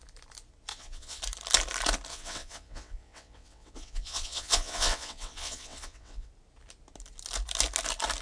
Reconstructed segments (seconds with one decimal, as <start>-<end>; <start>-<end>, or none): 0.7-1.2; 2.1-6.3